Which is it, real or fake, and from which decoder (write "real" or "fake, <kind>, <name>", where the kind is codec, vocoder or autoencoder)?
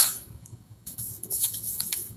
fake, codec, DAC